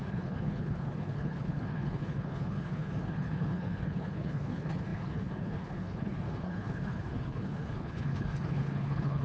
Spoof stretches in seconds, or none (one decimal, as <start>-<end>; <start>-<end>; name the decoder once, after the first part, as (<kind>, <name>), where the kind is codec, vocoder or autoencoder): 0.0-9.2 (codec, HILCodec)

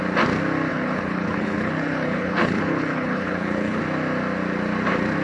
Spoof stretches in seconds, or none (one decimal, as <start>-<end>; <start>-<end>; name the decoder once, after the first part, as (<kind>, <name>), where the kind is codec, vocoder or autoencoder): 0.7-3.8 (codec, HILCodec)

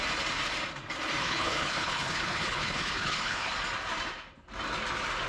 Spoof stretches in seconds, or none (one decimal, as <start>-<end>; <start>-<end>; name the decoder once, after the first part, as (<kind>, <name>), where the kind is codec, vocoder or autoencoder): 1.2-3.5 (codec, HILCodec)

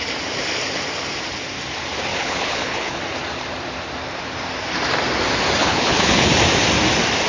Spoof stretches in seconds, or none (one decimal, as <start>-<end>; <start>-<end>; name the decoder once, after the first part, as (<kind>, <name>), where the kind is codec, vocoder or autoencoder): 2.1-3.0 (codec, HILCodec); 5.6-6.3

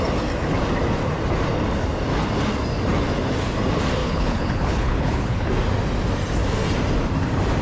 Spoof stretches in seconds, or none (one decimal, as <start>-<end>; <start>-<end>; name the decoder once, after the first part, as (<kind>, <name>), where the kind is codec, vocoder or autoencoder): 4.0-5.5 (codec, HILCodec)